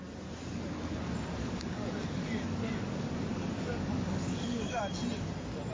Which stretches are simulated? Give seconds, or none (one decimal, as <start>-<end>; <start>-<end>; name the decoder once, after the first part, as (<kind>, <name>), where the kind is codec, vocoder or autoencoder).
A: 1.4-4.8 (codec, DAC)